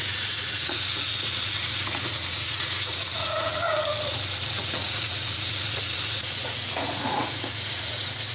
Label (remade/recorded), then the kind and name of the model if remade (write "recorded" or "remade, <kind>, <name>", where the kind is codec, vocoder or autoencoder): remade, vocoder, Vocos